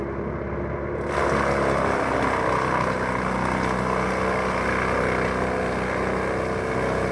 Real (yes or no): yes